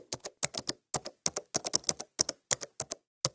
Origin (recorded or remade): recorded